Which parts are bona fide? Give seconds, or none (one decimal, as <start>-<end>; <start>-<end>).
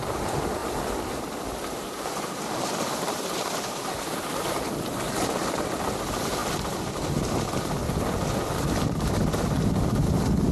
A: 0.0-0.6; 4.6-10.5